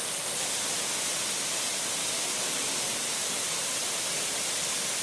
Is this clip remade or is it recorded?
recorded